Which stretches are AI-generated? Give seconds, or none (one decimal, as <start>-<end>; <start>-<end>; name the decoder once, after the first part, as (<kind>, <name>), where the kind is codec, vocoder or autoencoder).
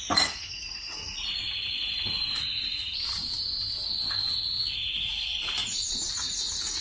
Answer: 0.0-2.9 (vocoder, Vocos); 4.3-5.6; 6.1-6.8